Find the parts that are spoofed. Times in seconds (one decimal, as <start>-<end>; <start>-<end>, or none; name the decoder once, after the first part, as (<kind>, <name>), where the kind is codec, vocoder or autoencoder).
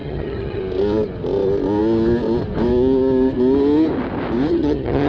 0.0-0.6 (vocoder, HiFi-GAN); 4.5-5.1